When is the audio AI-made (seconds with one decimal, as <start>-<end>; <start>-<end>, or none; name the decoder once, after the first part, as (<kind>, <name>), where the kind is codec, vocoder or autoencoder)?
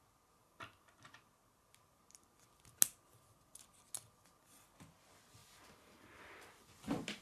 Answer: 0.4-0.9 (vocoder, BigVGAN v2); 5.4-6.7